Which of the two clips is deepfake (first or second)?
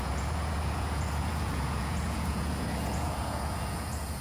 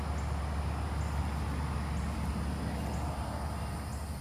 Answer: first